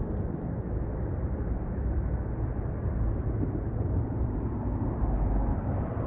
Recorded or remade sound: recorded